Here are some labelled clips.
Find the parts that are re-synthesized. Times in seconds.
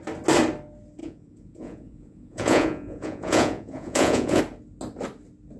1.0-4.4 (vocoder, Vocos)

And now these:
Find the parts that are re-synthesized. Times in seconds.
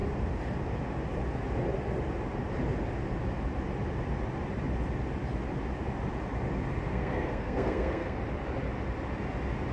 6.9-8.2 (codec, SNAC)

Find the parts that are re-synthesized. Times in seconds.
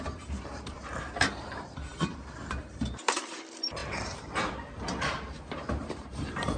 0.0-3.8 (vocoder, BigVGAN v2); 5.7-6.6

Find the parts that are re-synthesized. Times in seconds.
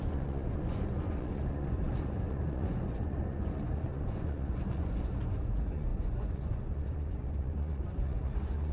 0.0-8.7 (vocoder, Vocos)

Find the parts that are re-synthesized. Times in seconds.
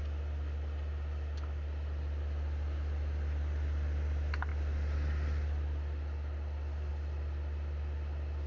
none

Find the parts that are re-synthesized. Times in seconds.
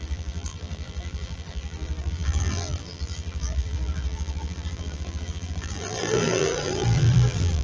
0.0-7.6 (vocoder, BigVGAN v2)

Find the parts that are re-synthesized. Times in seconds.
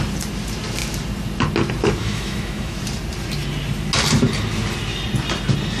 2.0-2.8 (autoencoder, DAC-VAE)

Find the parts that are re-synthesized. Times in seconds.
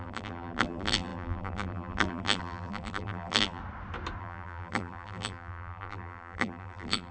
0.0-3.6 (vocoder, BigVGAN v2); 4.2-7.1